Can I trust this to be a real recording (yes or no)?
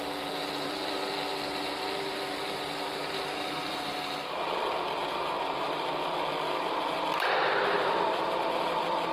no